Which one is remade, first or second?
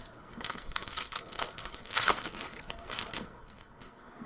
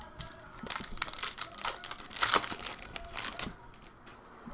first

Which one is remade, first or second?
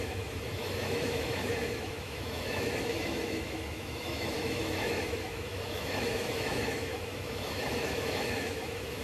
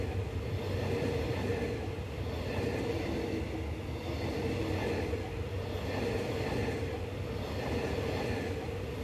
first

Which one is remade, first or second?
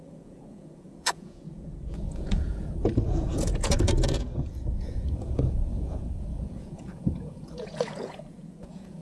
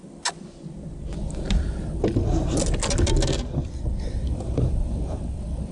first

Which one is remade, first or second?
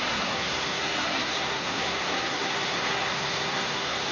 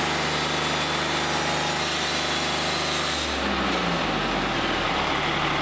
first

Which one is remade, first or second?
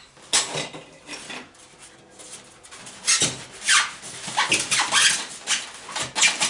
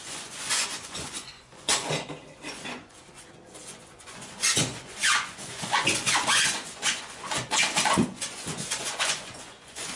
second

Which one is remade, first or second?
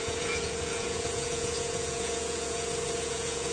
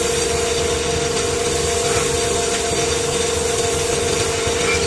first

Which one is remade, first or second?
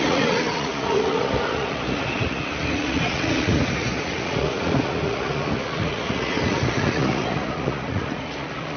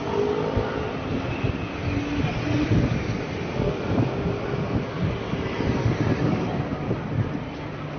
first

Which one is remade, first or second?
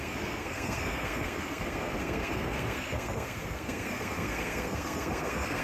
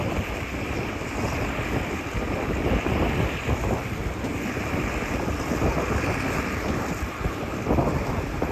first